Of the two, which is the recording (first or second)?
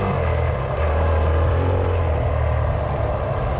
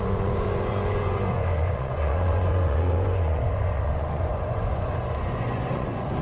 first